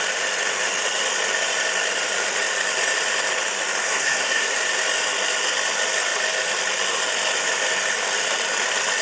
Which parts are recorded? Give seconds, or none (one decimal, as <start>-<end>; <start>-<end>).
0.0-3.8; 4.5-9.0